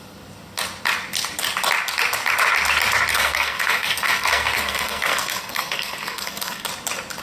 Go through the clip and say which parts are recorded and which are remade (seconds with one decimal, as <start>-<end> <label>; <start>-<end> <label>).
0.0-3.1 recorded; 3.1-6.7 remade; 6.7-7.2 recorded